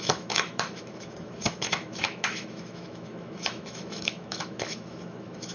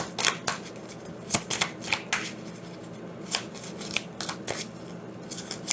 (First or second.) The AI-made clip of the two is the first